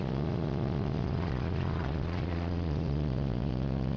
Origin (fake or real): fake